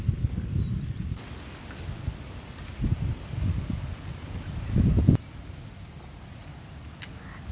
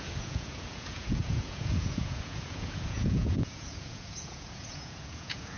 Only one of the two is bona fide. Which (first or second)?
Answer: first